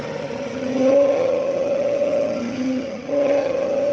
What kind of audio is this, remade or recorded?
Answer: remade